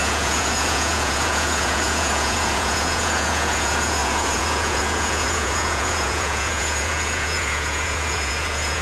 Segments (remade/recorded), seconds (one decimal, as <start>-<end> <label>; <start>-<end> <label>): 0.0-8.8 remade